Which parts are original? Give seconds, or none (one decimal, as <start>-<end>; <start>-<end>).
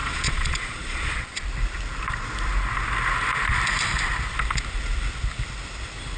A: 1.4-6.2